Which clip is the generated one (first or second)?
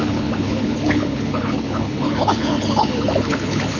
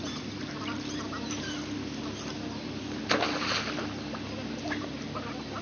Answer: first